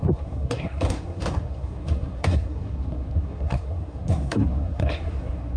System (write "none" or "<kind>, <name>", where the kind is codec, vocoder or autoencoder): codec, SNAC